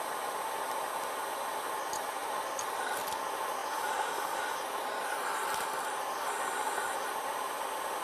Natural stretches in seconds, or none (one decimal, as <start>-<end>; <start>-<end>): 0.0-8.0